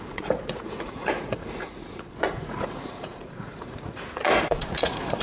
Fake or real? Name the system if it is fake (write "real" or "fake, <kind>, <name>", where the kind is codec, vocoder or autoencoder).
fake, vocoder, Vocos